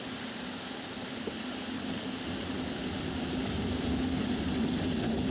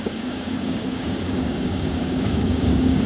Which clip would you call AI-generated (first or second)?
second